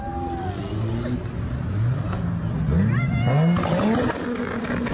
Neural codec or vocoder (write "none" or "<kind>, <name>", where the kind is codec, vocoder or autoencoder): none